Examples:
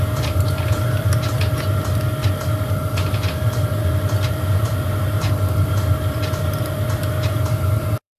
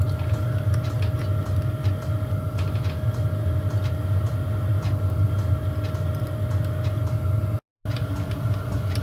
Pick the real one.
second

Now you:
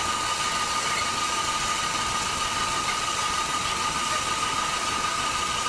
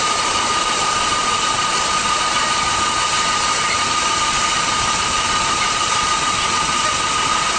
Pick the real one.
first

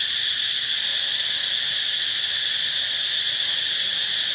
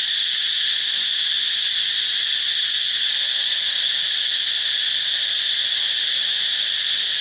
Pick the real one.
second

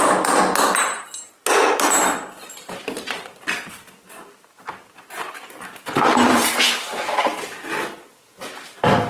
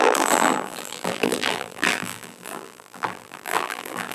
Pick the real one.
first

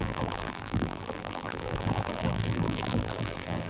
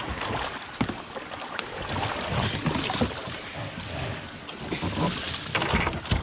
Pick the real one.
second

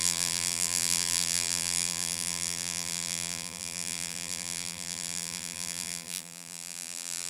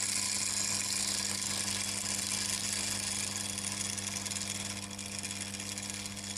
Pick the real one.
second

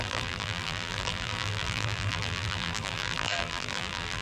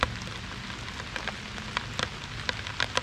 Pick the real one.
second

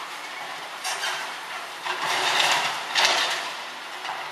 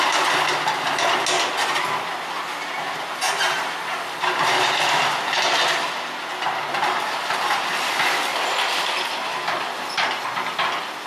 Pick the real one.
second